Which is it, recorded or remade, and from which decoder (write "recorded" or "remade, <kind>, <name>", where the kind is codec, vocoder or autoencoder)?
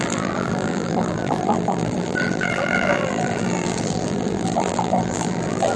remade, vocoder, BigVGAN v2